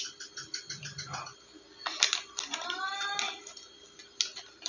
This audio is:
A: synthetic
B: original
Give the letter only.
B